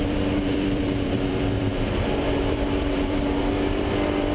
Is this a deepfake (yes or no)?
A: yes